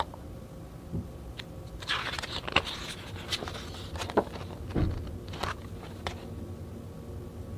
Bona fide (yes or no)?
yes